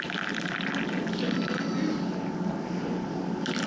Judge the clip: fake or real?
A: real